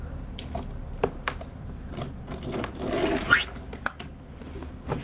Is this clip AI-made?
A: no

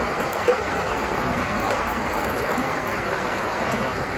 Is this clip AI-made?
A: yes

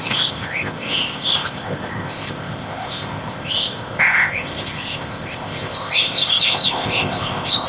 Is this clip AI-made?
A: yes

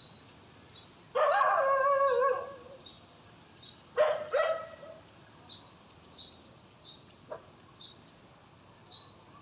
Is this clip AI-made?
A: no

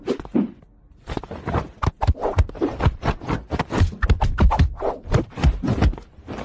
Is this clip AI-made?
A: no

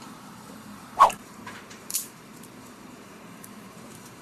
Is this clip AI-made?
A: yes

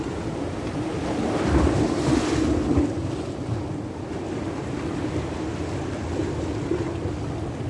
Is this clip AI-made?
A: no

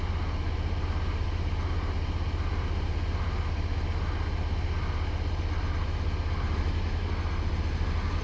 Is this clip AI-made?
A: no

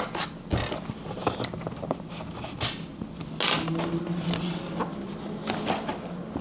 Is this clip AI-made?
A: no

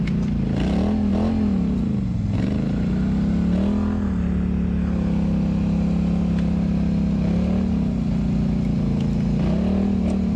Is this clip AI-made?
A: no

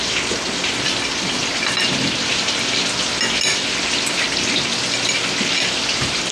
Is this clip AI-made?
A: no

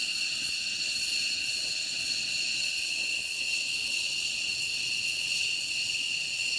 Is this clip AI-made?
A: yes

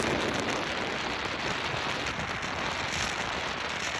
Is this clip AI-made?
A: no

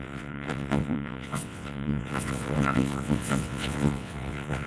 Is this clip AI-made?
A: yes